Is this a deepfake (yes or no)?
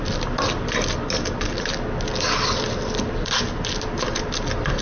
no